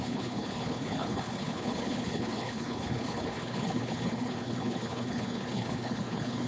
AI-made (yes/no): yes